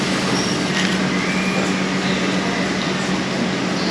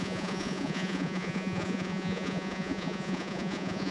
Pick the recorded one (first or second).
first